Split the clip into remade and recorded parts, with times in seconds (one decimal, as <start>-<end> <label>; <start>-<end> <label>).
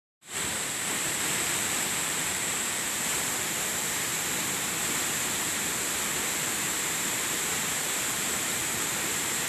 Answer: 0.0-4.1 remade; 4.1-6.1 recorded; 6.1-9.5 remade